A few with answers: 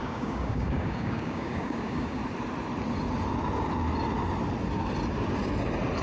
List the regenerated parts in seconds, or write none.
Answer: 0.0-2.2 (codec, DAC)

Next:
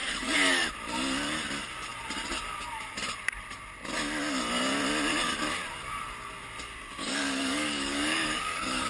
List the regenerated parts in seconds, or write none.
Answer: 0.0-0.7 (codec, DAC); 7.0-8.9

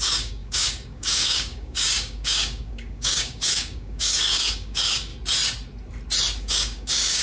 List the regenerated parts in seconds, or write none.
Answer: 0.0-5.1 (codec, DAC); 6.4-7.2